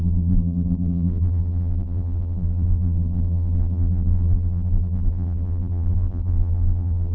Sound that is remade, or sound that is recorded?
remade